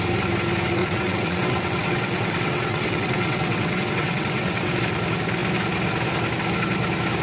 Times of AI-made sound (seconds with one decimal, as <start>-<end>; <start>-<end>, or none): 0.8-4.8